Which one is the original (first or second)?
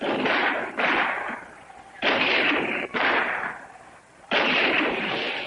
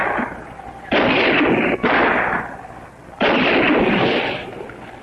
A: second